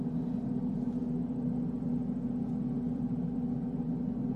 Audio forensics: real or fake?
real